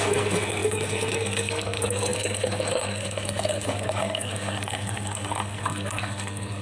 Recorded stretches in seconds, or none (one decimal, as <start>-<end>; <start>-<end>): none